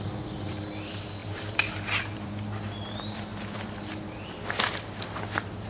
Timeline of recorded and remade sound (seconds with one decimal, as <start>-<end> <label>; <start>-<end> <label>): 0.0-1.2 recorded; 1.2-3.9 remade; 3.9-5.7 recorded